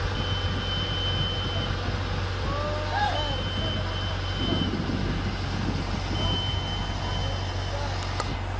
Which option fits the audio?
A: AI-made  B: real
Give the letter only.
B